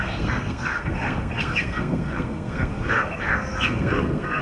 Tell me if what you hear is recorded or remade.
remade